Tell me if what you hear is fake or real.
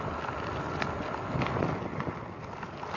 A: real